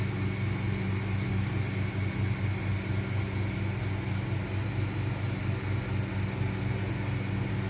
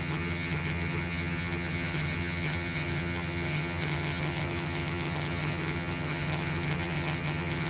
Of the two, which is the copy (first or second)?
second